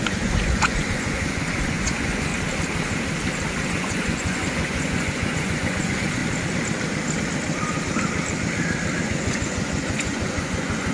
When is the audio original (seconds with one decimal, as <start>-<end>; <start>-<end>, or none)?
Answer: 2.3-3.7; 6.2-9.0